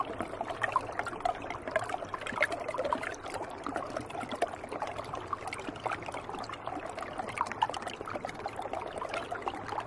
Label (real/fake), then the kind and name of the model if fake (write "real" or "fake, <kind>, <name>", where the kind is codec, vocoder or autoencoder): real